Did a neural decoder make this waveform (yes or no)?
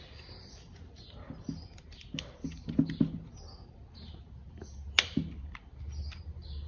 no